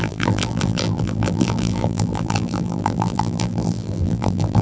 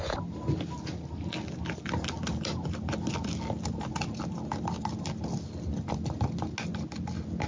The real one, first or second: second